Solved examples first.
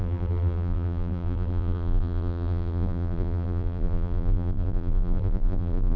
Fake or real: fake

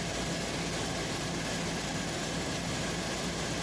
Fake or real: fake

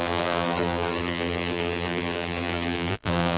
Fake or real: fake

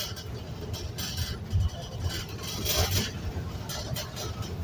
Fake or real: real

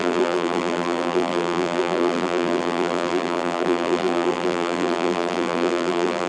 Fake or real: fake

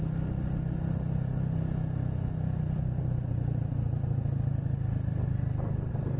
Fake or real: real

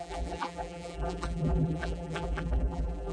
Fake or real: fake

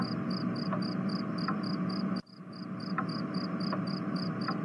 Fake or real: fake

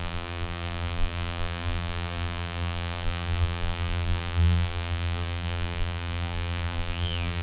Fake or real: fake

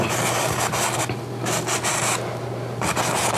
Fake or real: real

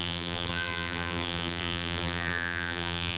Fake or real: fake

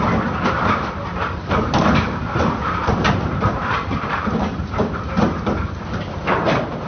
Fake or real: real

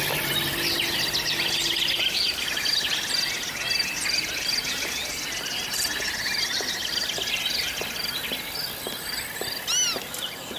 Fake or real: real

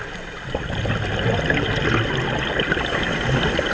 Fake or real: real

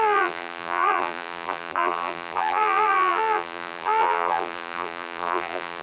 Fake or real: fake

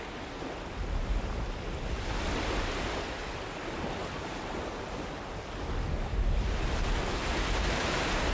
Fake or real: real